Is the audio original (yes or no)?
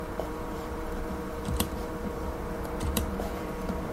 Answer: no